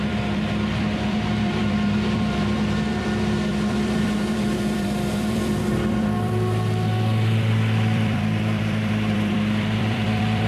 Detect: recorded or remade remade